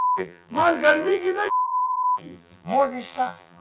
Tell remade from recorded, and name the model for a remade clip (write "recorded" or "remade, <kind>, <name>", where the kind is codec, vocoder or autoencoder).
remade, vocoder, BigVGAN v2